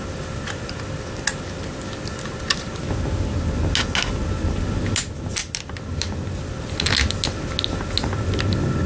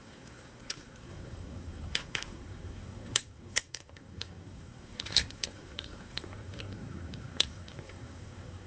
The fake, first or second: second